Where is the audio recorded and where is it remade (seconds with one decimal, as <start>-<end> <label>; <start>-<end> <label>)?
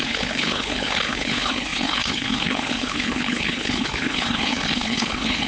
0.0-5.5 remade